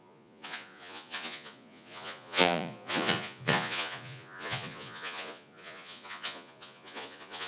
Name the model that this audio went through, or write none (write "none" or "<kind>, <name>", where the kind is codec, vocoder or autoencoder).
vocoder, Vocos